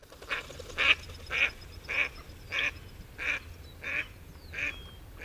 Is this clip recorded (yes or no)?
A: yes